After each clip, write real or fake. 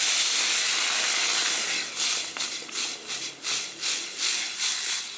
real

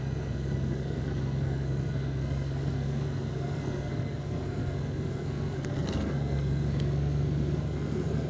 fake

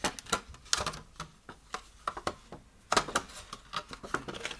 real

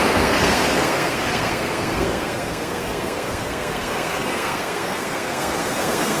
fake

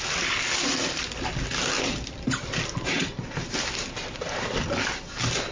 real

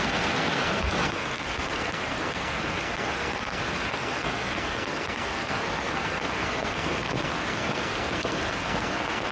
fake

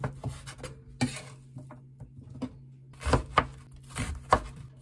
real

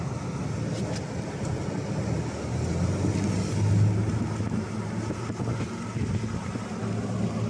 real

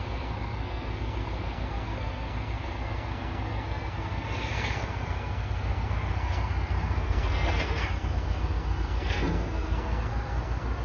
fake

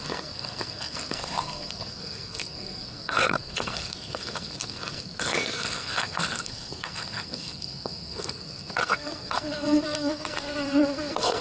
fake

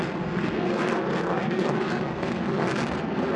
fake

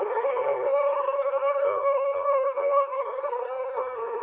fake